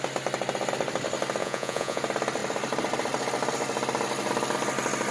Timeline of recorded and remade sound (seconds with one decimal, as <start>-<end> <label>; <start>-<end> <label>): 0.0-1.4 recorded; 1.4-2.0 remade; 2.0-5.1 recorded